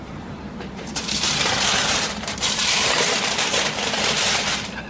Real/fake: fake